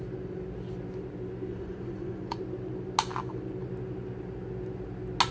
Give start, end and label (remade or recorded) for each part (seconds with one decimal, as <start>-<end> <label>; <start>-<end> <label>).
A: 0.0-1.5 recorded; 1.5-2.4 remade; 2.4-5.3 recorded